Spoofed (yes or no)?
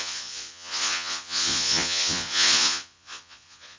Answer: yes